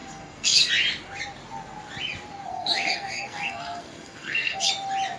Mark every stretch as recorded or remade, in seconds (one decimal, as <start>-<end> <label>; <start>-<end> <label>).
0.0-0.7 remade; 0.7-2.5 recorded; 2.5-4.7 remade; 4.7-5.2 recorded